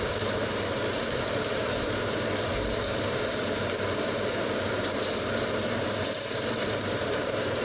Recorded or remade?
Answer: remade